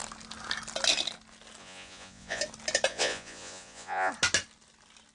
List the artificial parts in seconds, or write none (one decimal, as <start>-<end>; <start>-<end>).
1.6-2.4; 2.9-4.1